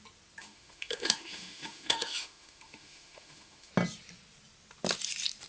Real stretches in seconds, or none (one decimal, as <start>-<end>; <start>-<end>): 0.0-0.4; 3.7-5.5